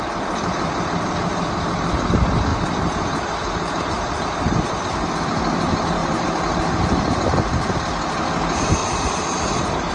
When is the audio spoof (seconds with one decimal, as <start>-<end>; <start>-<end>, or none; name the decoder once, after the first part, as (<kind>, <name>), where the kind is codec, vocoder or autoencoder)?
2.5-5.2 (vocoder, BigVGAN v2); 6.0-6.6; 8.8-9.9